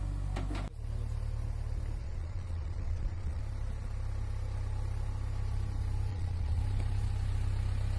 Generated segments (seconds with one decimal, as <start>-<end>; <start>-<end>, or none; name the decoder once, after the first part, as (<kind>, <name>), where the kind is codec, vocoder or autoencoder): 2.0-3.4 (vocoder, Vocos); 6.1-6.6